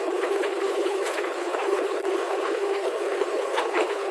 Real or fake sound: fake